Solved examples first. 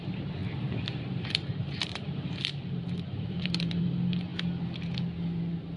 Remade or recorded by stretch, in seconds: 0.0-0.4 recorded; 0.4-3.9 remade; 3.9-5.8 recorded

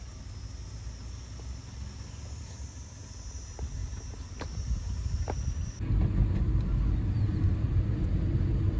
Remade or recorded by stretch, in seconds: 0.0-8.8 recorded